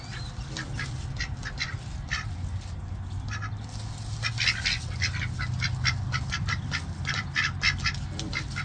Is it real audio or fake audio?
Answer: real